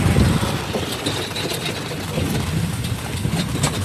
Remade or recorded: recorded